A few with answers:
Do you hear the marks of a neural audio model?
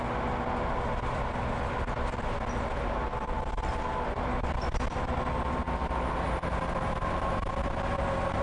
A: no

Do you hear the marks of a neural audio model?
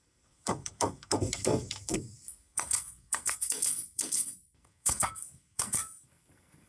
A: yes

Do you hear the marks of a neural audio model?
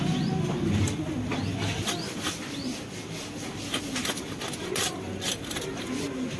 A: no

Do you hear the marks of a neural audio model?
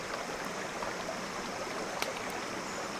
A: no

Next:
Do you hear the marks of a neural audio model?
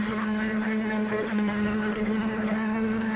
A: yes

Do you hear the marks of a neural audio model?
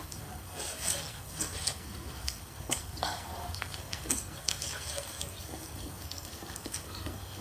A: yes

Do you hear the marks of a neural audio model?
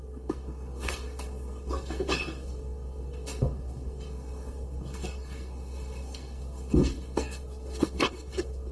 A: yes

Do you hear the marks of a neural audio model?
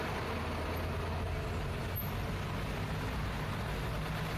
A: no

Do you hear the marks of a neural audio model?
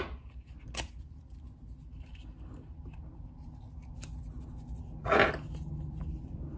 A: no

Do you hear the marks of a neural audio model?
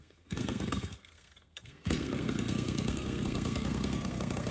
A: yes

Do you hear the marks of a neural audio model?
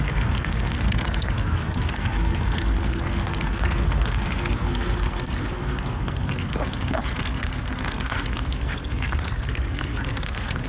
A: yes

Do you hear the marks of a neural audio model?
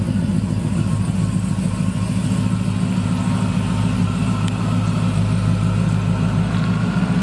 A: no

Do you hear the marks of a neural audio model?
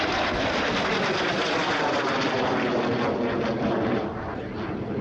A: no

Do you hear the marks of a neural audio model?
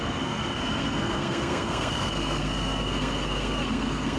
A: yes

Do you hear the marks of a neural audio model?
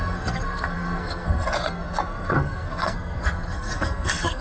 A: yes